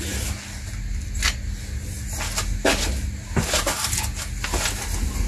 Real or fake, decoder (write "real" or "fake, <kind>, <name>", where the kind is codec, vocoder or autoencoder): real